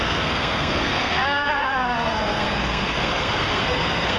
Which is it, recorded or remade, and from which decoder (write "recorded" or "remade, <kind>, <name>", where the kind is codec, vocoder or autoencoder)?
remade, codec, SNAC